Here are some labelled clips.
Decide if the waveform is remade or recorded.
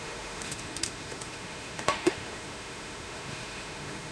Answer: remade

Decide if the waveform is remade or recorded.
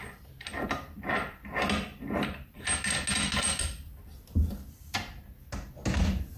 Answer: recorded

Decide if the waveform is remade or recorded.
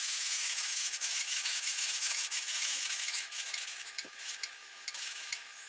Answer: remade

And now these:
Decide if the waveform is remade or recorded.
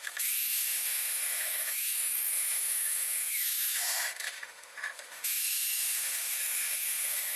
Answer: remade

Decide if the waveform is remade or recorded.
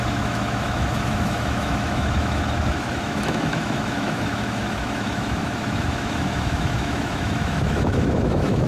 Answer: remade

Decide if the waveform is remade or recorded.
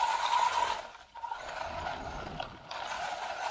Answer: recorded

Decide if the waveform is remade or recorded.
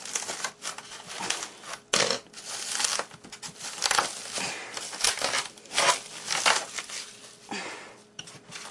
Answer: recorded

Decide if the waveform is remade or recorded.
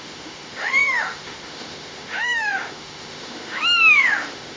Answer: remade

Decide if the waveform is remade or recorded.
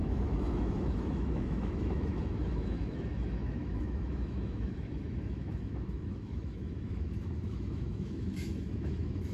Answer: remade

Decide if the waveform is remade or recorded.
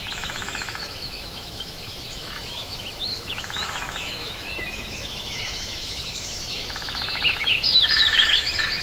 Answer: remade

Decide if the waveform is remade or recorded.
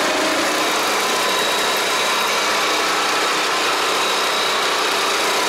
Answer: recorded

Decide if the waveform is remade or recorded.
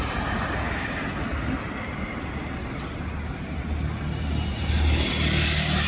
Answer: recorded